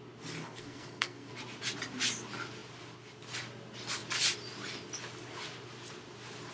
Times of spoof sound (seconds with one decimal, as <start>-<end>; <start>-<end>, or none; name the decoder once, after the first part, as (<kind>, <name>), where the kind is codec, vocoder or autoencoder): 0.4-1.3 (codec, SNAC)